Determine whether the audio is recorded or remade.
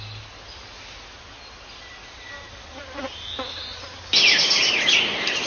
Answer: recorded